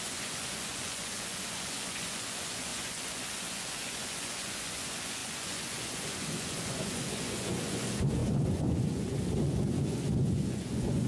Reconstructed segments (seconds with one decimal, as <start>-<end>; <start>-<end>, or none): 0.0-11.1